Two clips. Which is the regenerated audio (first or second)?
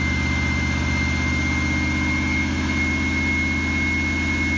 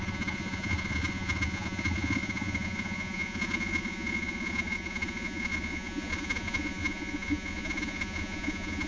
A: second